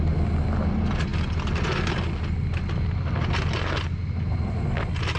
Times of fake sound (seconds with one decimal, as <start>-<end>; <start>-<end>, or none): none